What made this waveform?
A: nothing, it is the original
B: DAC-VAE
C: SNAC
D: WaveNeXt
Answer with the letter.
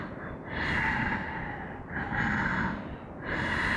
A